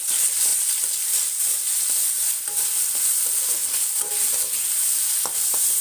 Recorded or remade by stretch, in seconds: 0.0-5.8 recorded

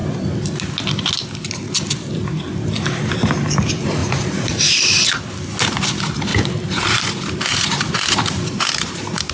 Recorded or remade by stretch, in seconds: 0.0-4.0 recorded; 4.0-4.9 remade; 4.9-6.3 recorded; 6.3-9.3 remade

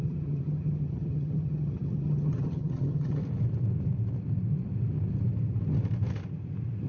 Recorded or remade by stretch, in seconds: 0.0-3.2 remade; 3.2-6.9 recorded

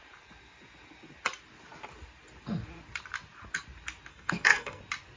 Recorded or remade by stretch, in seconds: 0.0-4.1 recorded; 4.1-4.8 remade; 4.8-5.2 recorded

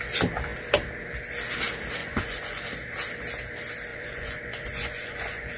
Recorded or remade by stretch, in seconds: 0.0-2.0 recorded; 2.0-2.6 remade; 2.6-3.9 recorded; 3.9-5.6 remade

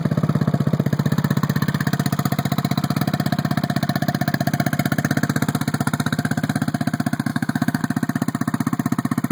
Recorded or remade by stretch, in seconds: 0.0-7.3 recorded; 7.3-7.8 remade; 7.8-9.3 recorded

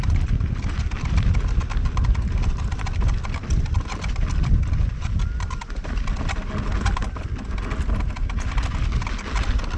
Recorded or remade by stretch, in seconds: 0.0-5.8 recorded; 5.8-6.5 remade; 6.5-9.8 recorded

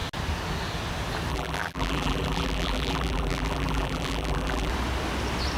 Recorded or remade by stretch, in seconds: 0.0-1.3 recorded; 1.3-4.7 remade; 4.7-5.6 recorded